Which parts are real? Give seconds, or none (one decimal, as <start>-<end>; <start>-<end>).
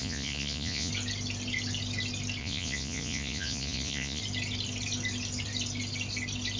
0.9-2.4; 4.2-6.6